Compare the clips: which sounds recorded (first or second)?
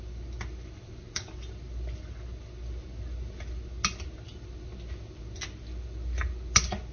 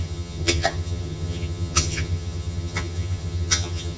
first